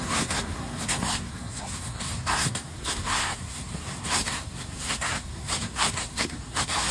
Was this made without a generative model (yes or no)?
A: no